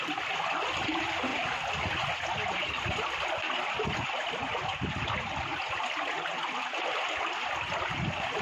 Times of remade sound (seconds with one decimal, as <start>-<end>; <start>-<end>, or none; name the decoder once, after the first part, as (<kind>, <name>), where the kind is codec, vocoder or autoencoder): 0.0-1.3 (vocoder, BigVGAN v2); 2.5-8.4